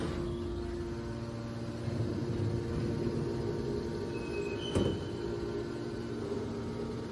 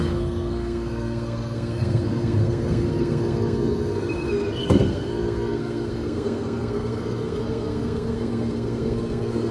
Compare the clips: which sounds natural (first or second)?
first